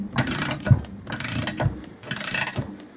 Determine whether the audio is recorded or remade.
remade